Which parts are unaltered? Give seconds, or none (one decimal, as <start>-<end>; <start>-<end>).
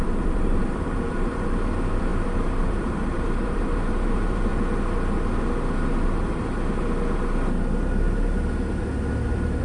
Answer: 4.5-9.6